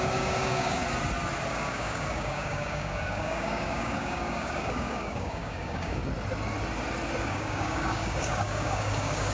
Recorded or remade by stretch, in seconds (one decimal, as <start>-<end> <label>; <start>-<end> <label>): 0.0-0.8 remade; 0.8-1.5 recorded; 1.5-6.0 remade; 6.0-7.2 recorded; 7.2-9.3 remade